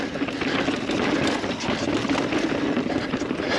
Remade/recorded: recorded